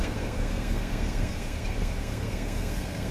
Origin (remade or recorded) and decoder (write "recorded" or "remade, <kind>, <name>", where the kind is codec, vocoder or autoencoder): remade, codec, SNAC